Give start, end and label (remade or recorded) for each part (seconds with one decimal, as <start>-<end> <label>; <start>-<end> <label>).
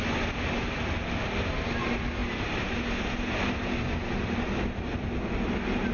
0.0-5.9 recorded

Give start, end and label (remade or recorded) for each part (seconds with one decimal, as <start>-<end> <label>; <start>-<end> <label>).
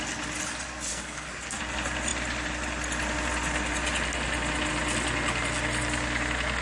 0.0-0.9 recorded; 0.9-1.6 remade; 1.6-6.6 recorded